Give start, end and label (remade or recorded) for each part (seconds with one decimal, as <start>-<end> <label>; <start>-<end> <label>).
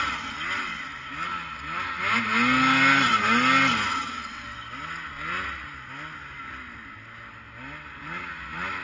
0.0-8.8 recorded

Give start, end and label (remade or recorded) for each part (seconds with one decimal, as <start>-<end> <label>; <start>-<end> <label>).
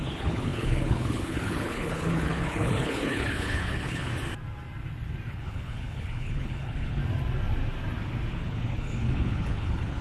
0.0-4.1 remade; 4.1-5.3 recorded; 5.3-7.0 remade; 7.0-8.3 recorded; 8.3-10.0 remade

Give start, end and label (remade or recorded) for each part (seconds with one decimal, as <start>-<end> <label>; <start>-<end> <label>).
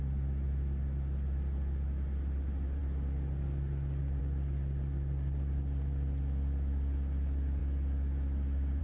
0.0-8.8 recorded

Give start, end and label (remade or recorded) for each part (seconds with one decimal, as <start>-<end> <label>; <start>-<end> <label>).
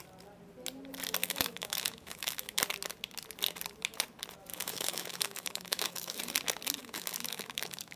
0.0-1.2 recorded; 1.2-2.6 remade; 2.6-4.5 recorded; 4.5-6.2 remade; 6.2-6.8 recorded; 6.8-8.0 remade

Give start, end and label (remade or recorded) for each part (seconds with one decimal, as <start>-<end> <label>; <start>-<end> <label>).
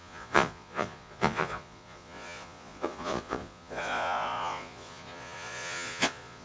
0.0-6.4 remade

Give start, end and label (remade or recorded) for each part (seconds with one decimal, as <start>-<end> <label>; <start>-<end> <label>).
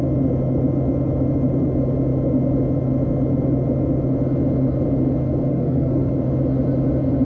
0.0-5.5 recorded; 5.5-6.1 remade; 6.1-7.2 recorded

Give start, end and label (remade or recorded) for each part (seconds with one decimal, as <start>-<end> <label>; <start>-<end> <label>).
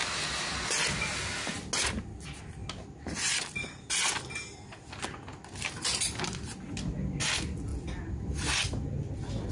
0.0-9.5 recorded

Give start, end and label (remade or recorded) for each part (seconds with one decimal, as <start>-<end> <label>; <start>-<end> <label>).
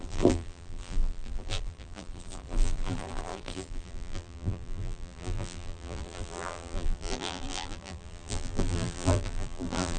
0.0-10.0 remade